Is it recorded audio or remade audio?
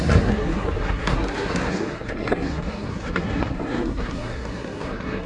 remade